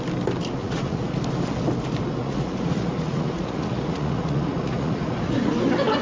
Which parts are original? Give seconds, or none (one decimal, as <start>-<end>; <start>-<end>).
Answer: 0.0-0.6; 1.2-2.2; 5.5-6.0

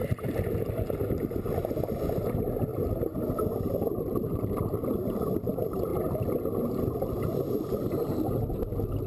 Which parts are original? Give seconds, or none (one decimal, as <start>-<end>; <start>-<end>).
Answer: 1.0-2.7; 3.5-5.9; 7.5-9.1

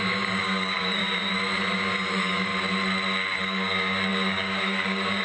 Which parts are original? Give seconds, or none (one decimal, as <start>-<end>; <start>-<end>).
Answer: 1.0-2.1; 2.5-3.4

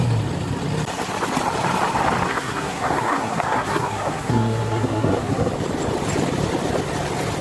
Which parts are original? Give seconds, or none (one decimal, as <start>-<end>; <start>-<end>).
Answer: 0.0-2.3; 5.5-7.4

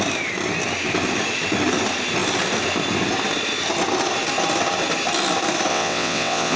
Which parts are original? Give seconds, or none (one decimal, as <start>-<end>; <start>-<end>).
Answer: 0.0-5.7